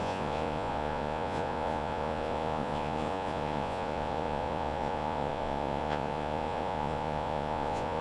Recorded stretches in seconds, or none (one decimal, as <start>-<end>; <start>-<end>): none